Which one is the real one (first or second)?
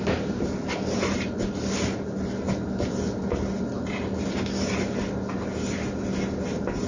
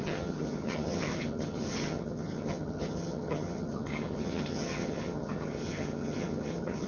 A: first